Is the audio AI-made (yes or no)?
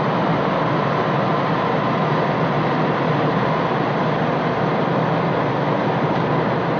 no